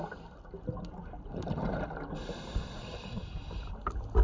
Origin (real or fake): real